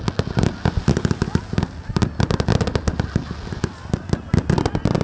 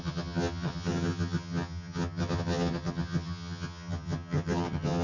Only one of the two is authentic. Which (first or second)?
first